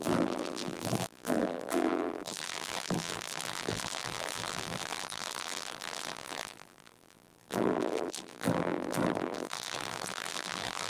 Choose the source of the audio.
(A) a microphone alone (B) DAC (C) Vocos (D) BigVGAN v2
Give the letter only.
D